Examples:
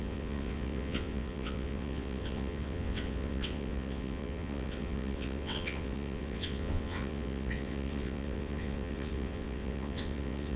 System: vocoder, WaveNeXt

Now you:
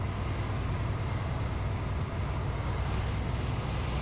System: none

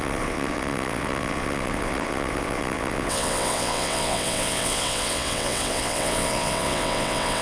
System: vocoder, WaveNeXt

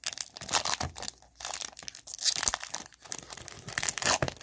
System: none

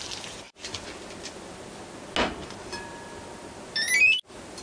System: none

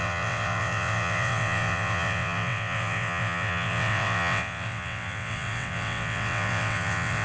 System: vocoder, WaveNeXt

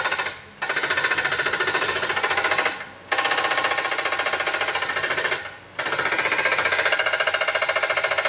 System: none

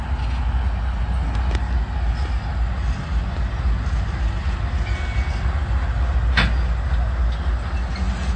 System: none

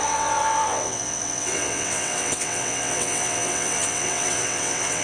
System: vocoder, WaveNeXt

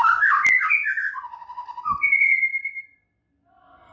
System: none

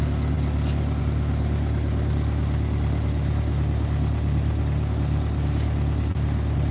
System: none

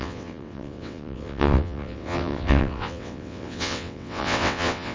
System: vocoder, WaveNeXt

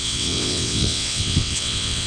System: vocoder, WaveNeXt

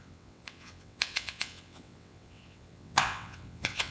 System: vocoder, WaveNeXt